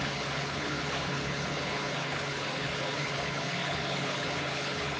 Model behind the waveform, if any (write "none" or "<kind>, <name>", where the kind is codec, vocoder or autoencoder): codec, HILCodec